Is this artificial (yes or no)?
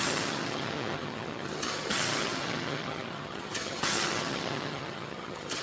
yes